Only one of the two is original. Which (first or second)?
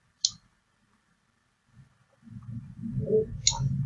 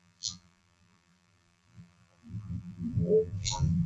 first